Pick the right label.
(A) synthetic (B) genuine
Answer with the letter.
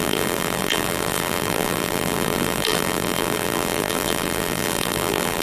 A